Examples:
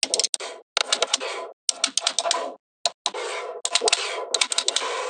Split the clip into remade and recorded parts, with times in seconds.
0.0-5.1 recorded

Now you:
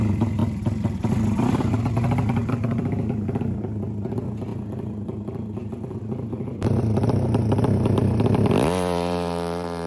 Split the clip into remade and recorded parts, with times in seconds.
0.0-0.4 recorded; 0.4-1.8 remade; 1.8-2.4 recorded; 2.4-3.4 remade; 3.4-4.5 recorded; 4.5-9.9 remade

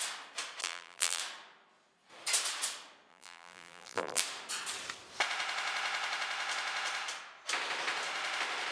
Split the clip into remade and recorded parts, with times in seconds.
0.0-0.6 recorded; 0.6-1.2 remade; 1.2-3.1 recorded; 3.1-4.2 remade; 4.2-8.7 recorded

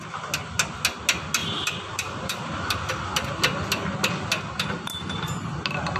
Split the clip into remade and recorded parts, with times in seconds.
0.0-1.4 recorded; 1.4-2.9 remade; 2.9-6.0 recorded

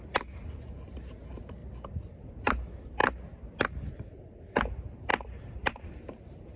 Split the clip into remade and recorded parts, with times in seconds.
0.0-1.6 recorded; 1.6-2.3 remade; 2.3-5.1 recorded; 5.1-5.8 remade; 5.8-6.6 recorded

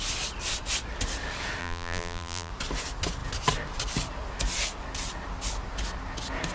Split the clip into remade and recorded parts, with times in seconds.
0.0-1.6 recorded; 1.6-2.5 remade; 2.5-6.5 recorded